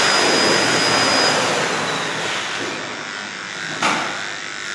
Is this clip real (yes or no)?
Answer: yes